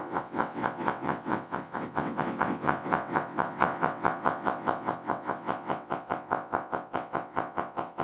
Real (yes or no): no